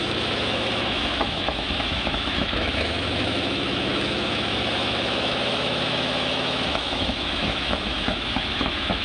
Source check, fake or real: fake